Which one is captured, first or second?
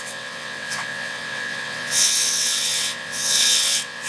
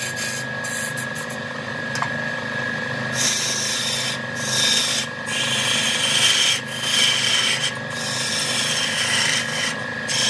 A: second